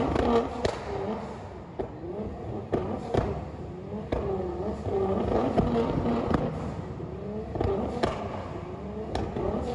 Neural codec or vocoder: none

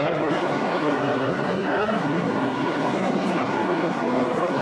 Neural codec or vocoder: codec, SNAC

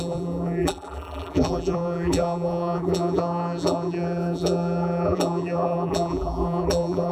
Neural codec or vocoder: vocoder, BigVGAN v2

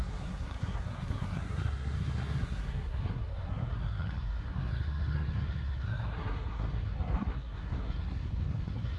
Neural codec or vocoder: codec, SNAC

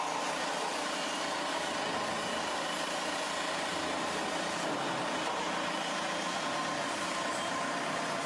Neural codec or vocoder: none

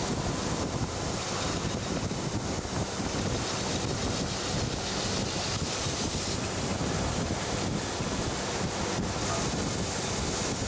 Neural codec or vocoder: none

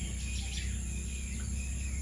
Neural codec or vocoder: none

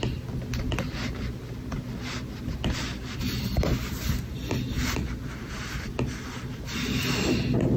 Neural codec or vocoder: none